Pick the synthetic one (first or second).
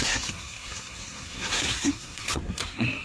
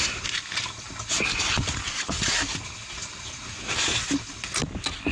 first